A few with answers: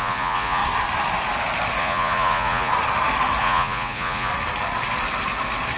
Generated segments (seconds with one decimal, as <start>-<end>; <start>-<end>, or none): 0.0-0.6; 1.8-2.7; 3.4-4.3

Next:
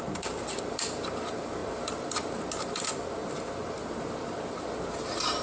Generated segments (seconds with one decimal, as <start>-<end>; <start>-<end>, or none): 1.6-2.4

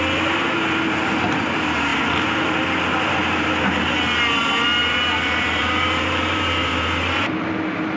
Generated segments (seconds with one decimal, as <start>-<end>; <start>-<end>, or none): 4.8-7.5